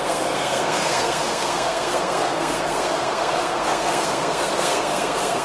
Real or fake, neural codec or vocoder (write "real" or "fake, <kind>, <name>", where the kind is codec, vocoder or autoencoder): fake, codec, SNAC